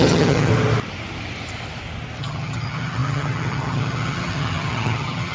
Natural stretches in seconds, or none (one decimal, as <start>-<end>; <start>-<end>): 0.5-2.2